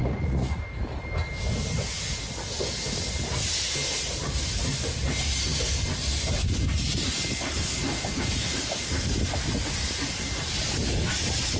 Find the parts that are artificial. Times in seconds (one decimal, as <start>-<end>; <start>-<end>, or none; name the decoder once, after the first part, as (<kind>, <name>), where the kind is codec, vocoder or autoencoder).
0.0-0.6 (vocoder, Vocos)